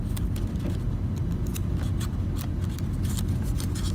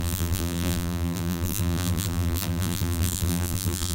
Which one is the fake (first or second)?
second